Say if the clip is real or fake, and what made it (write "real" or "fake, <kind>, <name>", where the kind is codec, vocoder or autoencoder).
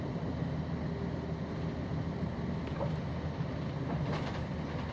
real